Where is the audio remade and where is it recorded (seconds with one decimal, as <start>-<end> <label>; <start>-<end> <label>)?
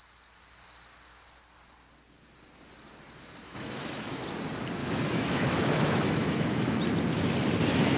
0.0-3.4 recorded; 3.4-4.2 remade; 4.2-4.8 recorded; 4.8-6.8 remade; 6.8-8.0 recorded